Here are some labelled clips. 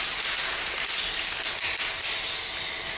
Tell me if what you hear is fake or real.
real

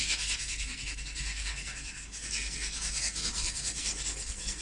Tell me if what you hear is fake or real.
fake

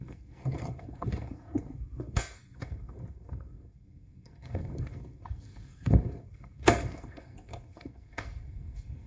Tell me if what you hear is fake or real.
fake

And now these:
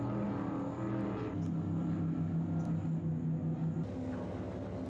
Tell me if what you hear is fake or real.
real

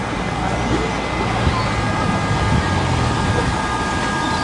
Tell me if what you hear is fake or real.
real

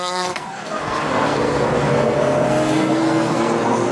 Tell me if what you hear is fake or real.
fake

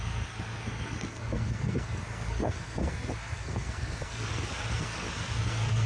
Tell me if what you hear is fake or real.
fake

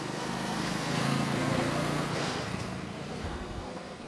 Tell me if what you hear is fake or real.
fake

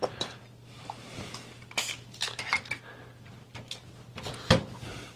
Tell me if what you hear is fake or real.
real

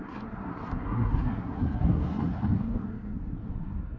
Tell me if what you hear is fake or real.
fake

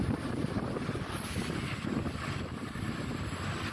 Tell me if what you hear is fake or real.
real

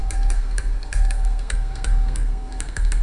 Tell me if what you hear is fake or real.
fake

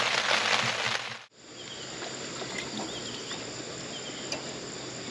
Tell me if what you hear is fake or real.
real